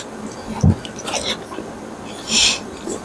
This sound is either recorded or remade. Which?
recorded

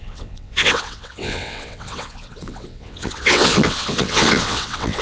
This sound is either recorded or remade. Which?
remade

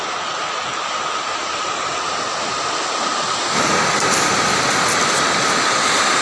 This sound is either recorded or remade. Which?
recorded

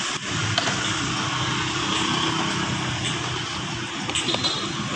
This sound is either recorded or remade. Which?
recorded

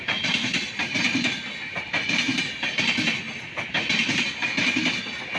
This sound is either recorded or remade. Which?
recorded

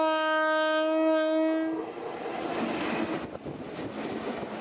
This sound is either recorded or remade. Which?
recorded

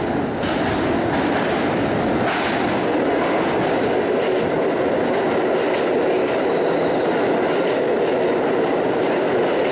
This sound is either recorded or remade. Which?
recorded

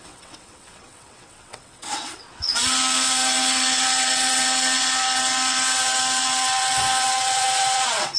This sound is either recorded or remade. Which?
remade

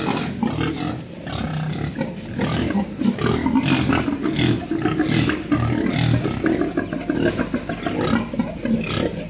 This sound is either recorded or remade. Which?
recorded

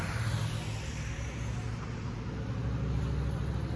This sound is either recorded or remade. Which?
recorded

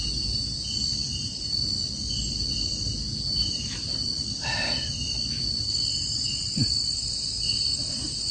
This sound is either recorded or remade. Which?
recorded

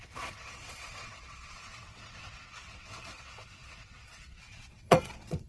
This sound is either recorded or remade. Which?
remade